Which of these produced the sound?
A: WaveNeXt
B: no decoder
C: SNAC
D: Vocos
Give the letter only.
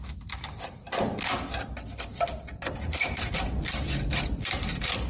B